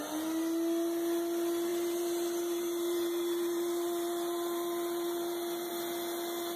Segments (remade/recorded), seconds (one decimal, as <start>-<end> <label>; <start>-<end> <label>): 0.0-1.7 recorded; 1.7-5.7 remade; 5.7-6.6 recorded